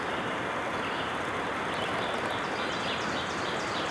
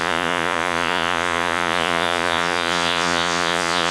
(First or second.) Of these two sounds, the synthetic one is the second